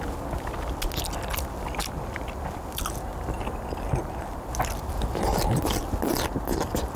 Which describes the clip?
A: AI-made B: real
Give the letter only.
B